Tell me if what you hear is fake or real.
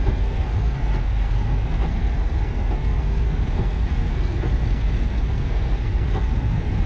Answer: fake